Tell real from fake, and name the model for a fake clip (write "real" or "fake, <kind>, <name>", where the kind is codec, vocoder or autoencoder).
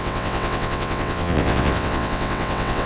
fake, vocoder, WaveNeXt